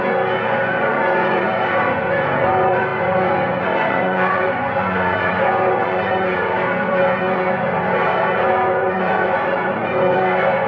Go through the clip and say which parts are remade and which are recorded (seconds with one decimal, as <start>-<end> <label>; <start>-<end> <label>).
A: 0.0-10.7 remade